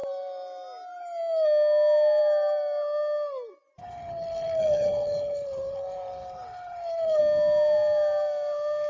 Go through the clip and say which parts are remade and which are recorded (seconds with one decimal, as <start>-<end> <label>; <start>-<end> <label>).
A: 0.0-3.8 recorded; 3.8-7.2 remade; 7.2-8.9 recorded